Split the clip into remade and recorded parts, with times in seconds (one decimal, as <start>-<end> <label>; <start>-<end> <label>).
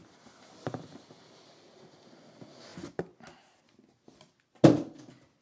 0.0-5.4 recorded